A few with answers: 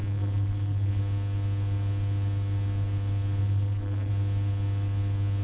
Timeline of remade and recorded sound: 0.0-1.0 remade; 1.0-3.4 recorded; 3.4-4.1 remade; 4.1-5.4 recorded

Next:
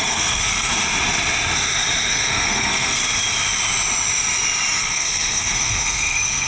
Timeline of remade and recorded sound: 0.0-0.7 remade; 0.7-2.1 recorded; 2.1-3.0 remade; 3.0-4.8 recorded; 4.8-6.5 remade

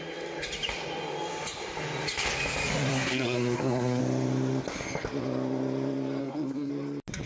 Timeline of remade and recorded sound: 0.0-2.9 recorded; 2.9-4.0 remade; 4.0-6.2 recorded; 6.2-6.7 remade; 6.7-7.3 recorded